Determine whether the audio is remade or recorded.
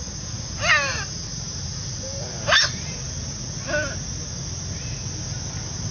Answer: recorded